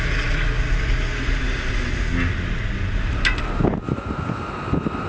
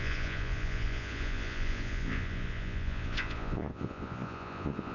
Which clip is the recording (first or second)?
first